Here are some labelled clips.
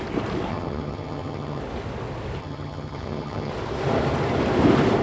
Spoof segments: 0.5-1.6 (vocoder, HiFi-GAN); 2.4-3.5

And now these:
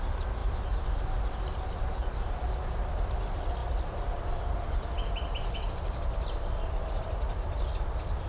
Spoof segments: none

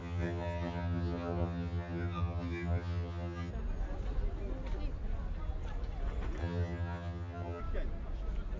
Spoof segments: 0.0-3.5 (vocoder, HiFi-GAN); 6.4-7.6